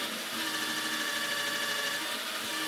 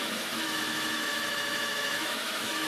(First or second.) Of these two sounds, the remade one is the second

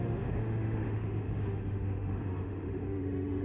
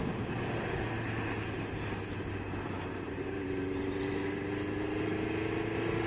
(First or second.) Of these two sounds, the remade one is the first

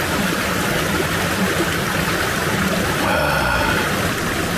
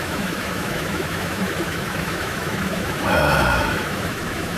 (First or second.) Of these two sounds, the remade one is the second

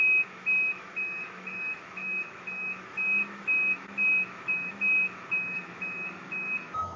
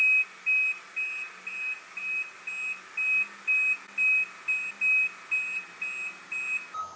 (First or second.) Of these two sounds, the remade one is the first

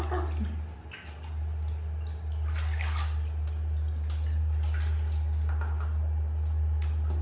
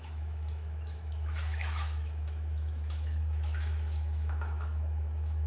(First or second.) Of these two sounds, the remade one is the second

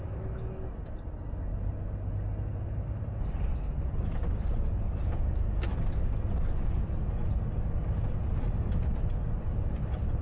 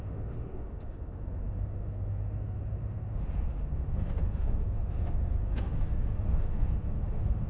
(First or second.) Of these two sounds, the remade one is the second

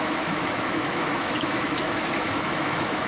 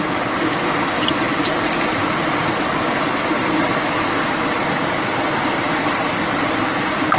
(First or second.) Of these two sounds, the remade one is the first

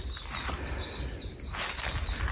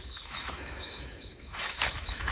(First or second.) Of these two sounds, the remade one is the second